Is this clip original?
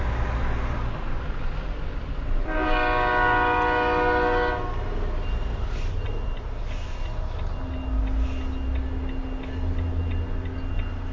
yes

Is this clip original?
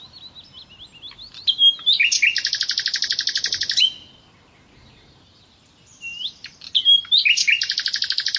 yes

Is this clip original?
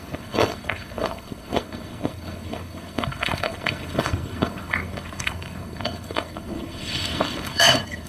no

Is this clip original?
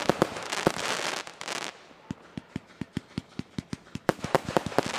yes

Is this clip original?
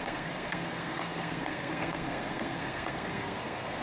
no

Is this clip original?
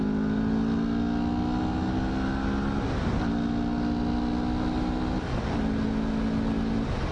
yes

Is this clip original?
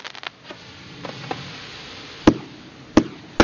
yes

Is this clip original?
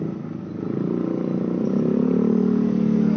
yes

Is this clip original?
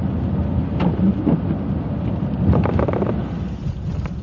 yes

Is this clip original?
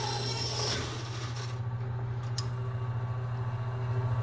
yes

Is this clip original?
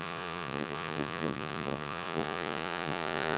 no